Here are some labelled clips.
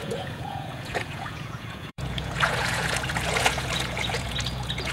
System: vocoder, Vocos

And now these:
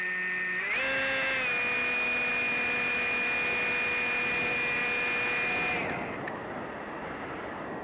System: none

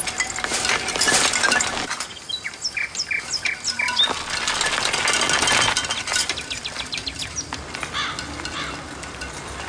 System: none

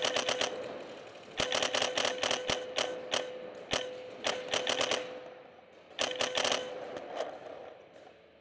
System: none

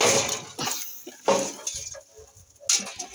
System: none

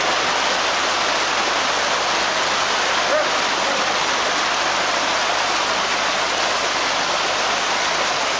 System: none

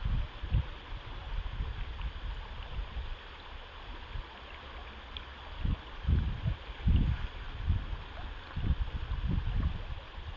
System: none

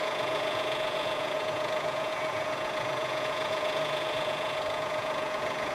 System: vocoder, Vocos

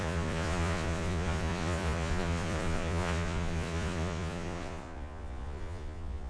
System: vocoder, Vocos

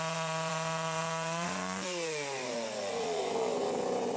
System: vocoder, Vocos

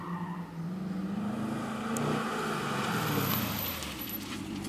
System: none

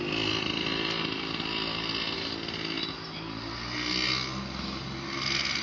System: none